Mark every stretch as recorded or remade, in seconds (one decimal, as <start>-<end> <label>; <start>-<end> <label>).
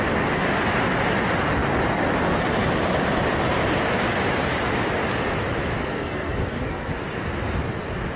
0.0-5.8 recorded; 5.8-6.9 remade; 6.9-8.2 recorded